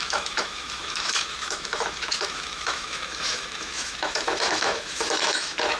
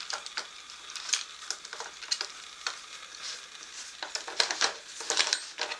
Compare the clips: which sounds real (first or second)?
second